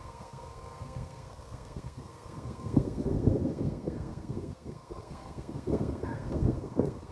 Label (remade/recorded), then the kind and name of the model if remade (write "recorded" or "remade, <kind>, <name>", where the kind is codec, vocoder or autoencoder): remade, codec, SNAC